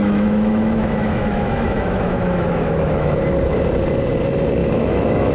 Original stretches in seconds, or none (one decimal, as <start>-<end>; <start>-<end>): 3.2-4.6